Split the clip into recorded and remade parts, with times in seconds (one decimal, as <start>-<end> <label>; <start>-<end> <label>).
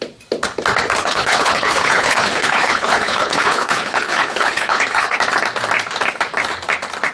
0.0-1.0 recorded; 1.0-5.2 remade; 5.2-7.1 recorded